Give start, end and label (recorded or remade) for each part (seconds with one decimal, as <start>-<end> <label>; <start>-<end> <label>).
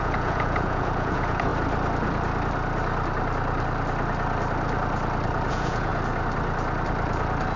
0.0-1.5 remade; 1.5-5.5 recorded; 5.5-5.9 remade; 5.9-7.6 recorded